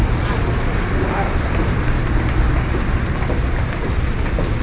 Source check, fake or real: fake